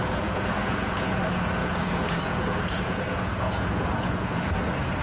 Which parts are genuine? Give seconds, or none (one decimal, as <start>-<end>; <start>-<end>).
1.2-1.6; 4.6-5.0